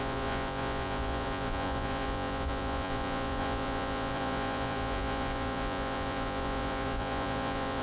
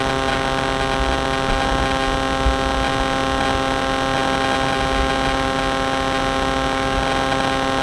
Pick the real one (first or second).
second